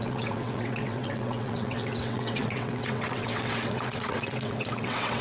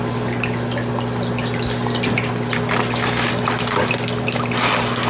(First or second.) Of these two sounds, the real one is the second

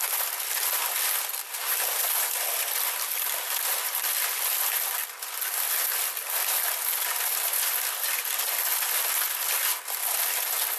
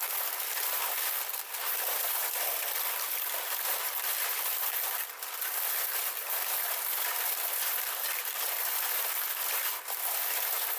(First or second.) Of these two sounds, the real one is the first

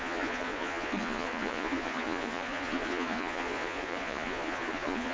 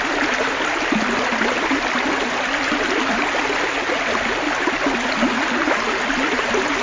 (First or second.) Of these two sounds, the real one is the second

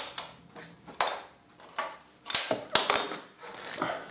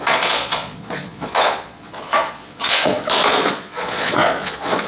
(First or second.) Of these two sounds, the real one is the first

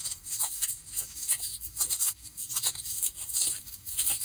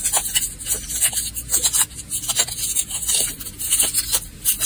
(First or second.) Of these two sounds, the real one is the second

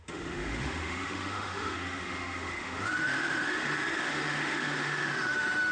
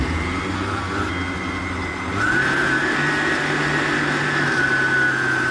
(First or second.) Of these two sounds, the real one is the second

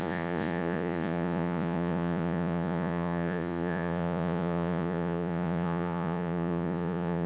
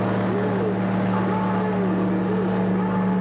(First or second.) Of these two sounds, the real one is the second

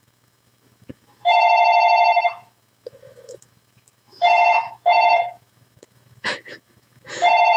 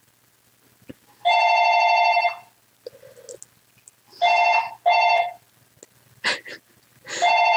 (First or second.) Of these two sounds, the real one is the second